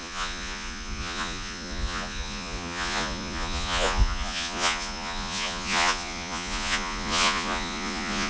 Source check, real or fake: fake